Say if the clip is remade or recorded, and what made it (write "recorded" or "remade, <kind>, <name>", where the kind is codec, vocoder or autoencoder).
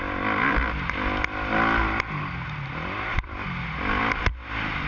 recorded